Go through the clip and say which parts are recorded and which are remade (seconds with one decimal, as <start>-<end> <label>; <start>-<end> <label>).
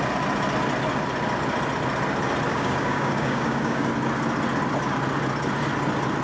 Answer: 0.0-2.5 recorded; 2.5-3.9 remade; 3.9-6.2 recorded